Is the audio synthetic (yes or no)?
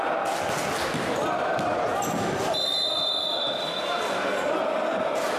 no